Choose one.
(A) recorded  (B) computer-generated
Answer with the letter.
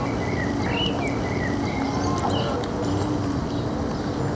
A